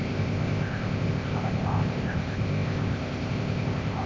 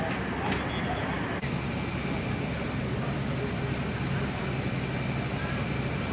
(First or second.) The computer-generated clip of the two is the first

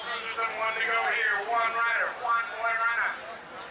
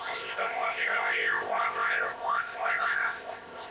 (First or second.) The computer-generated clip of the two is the second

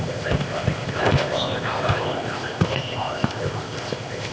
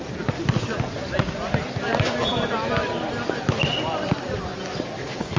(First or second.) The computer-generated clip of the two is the first